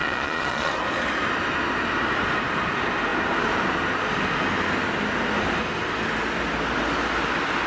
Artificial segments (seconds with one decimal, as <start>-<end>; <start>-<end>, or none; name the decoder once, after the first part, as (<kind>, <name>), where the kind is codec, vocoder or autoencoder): 0.0-0.7 (vocoder, Vocos)